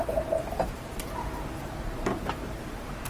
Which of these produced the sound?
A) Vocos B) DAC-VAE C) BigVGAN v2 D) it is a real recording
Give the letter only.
C